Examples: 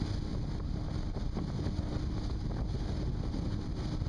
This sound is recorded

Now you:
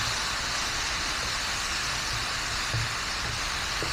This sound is recorded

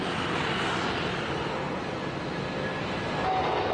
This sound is recorded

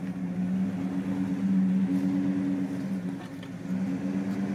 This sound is recorded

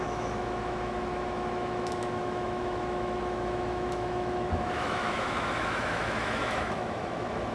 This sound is remade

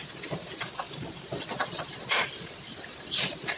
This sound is remade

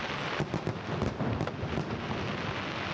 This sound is recorded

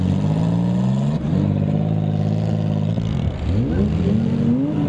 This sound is recorded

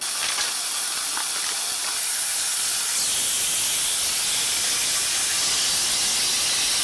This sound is recorded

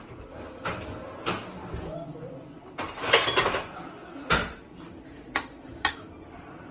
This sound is recorded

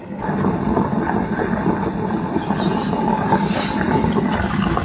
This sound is recorded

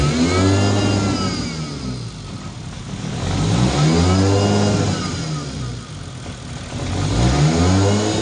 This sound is recorded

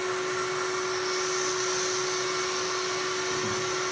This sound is recorded